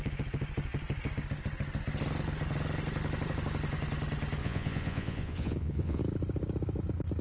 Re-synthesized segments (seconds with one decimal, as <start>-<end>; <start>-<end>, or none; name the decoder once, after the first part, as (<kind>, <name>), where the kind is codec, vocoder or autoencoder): 4.4-6.0 (vocoder, Vocos)